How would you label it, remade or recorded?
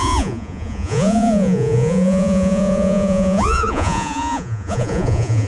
remade